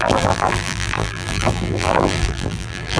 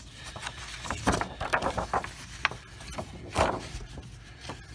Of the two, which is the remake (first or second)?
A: first